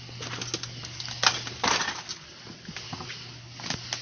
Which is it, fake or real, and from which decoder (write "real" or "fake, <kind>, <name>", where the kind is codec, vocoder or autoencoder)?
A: real